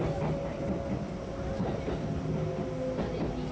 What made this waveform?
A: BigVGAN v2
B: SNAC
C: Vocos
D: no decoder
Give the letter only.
D